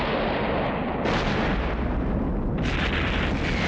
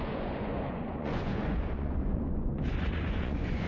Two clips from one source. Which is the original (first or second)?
first